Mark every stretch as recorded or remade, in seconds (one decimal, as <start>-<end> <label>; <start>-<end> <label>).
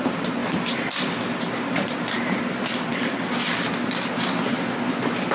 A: 0.0-0.4 recorded; 0.4-2.4 remade; 2.4-2.9 recorded; 2.9-3.6 remade; 3.6-5.3 recorded